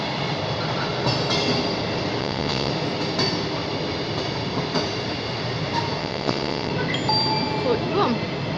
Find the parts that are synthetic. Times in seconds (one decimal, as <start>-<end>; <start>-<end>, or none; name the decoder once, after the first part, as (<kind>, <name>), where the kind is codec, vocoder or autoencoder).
2.2-2.7 (vocoder, WaveNeXt); 6.0-6.7